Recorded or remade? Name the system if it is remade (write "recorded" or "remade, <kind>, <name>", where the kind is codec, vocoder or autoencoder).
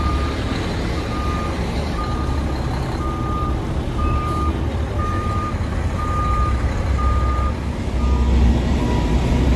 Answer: recorded